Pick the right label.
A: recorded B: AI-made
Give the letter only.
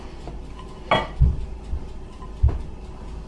A